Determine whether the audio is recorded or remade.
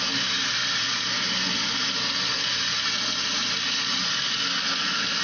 recorded